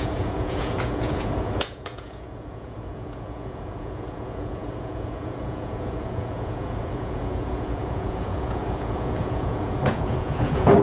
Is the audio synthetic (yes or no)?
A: yes